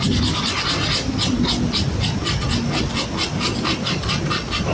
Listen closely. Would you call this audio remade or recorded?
recorded